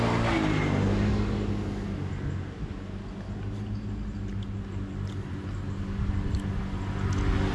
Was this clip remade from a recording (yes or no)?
no